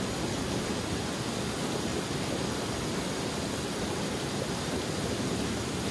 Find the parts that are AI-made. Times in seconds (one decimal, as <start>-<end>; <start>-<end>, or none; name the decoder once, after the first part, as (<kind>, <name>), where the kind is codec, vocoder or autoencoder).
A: none